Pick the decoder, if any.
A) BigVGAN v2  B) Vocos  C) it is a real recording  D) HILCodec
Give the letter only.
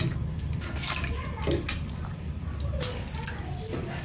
C